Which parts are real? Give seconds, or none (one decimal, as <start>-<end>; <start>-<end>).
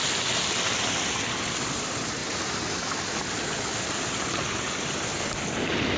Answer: 0.0-6.0